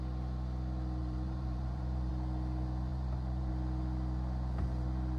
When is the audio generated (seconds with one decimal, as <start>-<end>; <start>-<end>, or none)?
1.0-2.1; 2.9-3.5